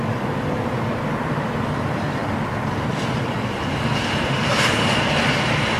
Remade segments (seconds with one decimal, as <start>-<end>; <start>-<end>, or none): none